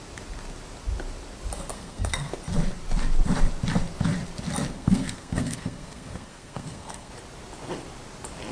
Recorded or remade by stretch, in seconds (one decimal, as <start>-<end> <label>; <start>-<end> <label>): 0.0-1.7 recorded; 1.7-2.3 remade; 2.3-4.7 recorded; 4.7-7.1 remade; 7.1-8.5 recorded